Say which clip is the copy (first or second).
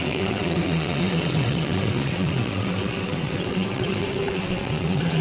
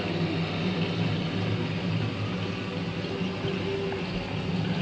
first